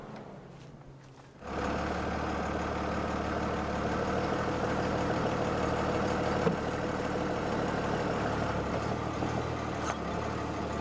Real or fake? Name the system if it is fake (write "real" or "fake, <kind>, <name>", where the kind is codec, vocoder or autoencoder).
real